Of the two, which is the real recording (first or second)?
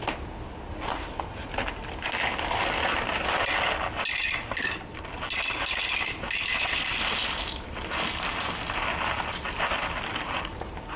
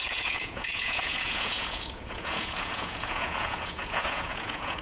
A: first